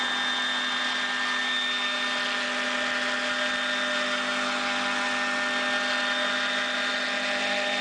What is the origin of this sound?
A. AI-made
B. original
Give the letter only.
B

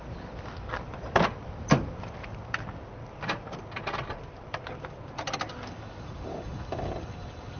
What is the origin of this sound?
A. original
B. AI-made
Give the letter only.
A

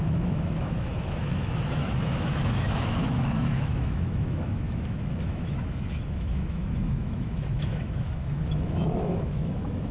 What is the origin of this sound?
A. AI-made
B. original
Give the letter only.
A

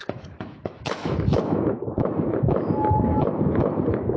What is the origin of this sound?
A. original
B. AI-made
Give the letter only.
B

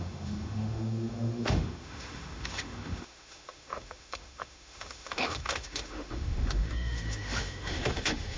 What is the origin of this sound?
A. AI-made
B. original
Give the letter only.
A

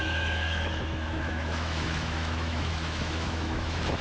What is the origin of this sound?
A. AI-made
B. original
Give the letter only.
A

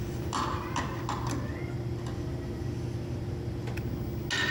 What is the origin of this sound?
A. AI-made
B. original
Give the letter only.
B